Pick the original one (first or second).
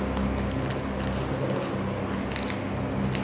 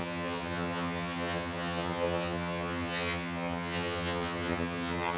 first